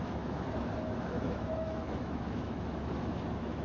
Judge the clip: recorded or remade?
remade